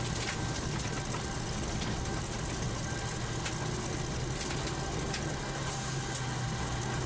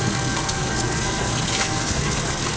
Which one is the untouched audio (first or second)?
first